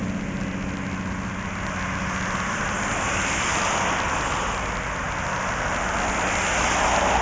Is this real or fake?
real